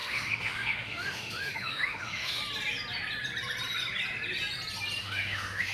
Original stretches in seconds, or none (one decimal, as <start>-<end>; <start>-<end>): 2.4-5.0